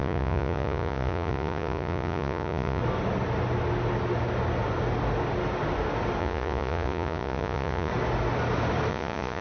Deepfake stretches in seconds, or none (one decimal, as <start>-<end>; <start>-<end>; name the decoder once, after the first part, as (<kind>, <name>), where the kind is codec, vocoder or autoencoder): 0.0-2.8 (vocoder, Vocos); 6.2-7.9; 8.9-9.4